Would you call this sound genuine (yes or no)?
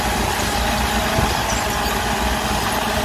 yes